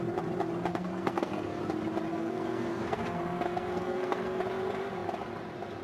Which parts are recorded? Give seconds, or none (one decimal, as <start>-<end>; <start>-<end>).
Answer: 0.0-0.7; 1.6-2.1; 4.4-5.8